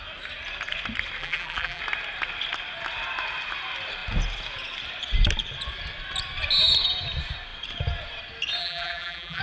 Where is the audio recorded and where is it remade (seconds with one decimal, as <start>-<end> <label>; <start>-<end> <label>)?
0.0-1.2 recorded; 1.2-1.8 remade; 1.8-8.6 recorded; 8.6-9.4 remade